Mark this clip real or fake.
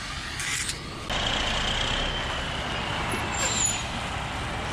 real